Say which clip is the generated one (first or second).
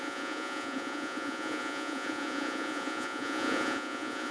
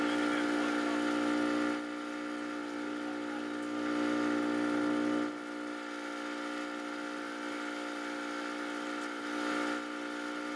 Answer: first